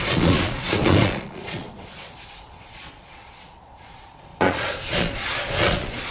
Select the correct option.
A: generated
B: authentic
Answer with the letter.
A